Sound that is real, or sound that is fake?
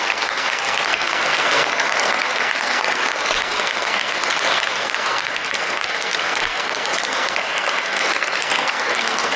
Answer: fake